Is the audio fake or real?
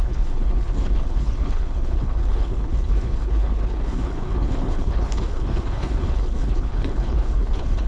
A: fake